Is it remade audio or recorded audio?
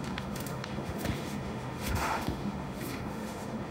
remade